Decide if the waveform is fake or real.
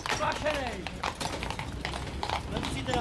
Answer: real